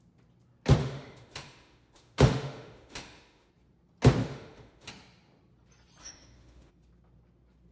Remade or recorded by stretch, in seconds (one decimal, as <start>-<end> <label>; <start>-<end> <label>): 0.0-0.8 recorded; 0.8-3.5 remade; 3.5-4.2 recorded; 4.2-4.9 remade; 4.9-6.0 recorded; 6.0-6.7 remade; 6.7-7.7 recorded